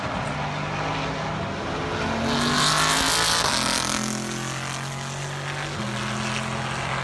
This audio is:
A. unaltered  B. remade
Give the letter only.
A